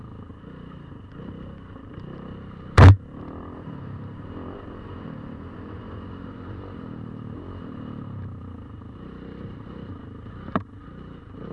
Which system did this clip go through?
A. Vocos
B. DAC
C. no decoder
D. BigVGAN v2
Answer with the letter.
D